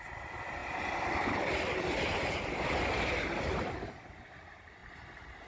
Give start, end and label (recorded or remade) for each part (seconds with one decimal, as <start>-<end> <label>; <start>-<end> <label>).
0.0-5.5 recorded